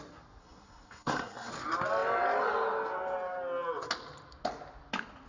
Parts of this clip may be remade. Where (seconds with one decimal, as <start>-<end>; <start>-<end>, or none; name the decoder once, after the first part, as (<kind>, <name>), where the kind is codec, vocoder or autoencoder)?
0.4-1.5 (codec, SNAC)